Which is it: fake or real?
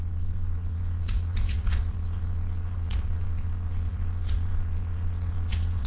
fake